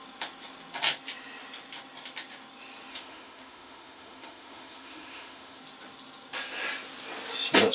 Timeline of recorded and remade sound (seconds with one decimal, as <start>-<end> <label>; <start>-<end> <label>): 0.0-2.9 recorded; 2.9-5.6 remade; 5.6-7.7 recorded

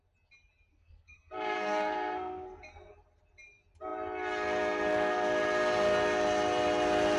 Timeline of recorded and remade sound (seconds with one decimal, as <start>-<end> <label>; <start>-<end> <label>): 0.0-0.7 recorded; 0.7-2.9 remade; 2.9-7.2 recorded

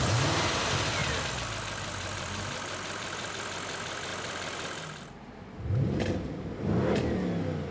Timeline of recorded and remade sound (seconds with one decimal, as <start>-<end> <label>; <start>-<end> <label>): 0.0-1.0 recorded; 1.0-3.3 remade; 3.3-4.1 recorded; 4.1-6.0 remade; 6.0-7.7 recorded

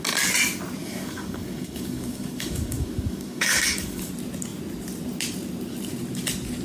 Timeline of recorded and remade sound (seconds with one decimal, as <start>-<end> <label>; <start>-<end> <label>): 0.0-0.8 recorded; 0.8-4.1 remade; 4.1-6.6 recorded

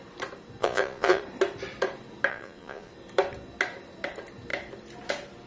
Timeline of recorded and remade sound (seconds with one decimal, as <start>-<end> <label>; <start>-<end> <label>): 0.0-0.6 recorded; 0.6-1.2 remade; 1.2-2.3 recorded; 2.3-2.9 remade; 2.9-5.5 recorded

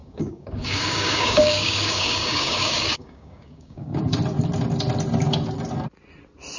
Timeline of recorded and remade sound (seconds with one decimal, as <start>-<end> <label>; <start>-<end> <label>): 0.0-4.0 remade; 4.0-6.6 recorded

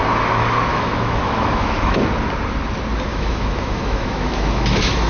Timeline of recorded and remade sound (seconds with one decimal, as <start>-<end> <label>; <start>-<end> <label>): 0.0-0.7 recorded; 0.7-2.0 remade; 2.0-3.1 recorded; 3.1-5.1 remade

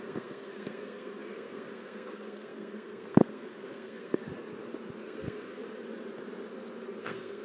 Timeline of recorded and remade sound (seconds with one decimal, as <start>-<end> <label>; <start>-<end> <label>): 0.0-4.2 remade; 4.2-5.0 recorded; 5.0-5.6 remade; 5.6-7.0 recorded; 7.0-7.4 remade